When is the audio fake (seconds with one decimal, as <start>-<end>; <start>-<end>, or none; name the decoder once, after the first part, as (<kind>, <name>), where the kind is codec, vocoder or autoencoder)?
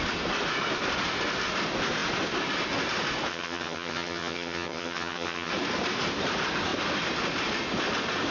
3.3-5.5 (vocoder, HiFi-GAN)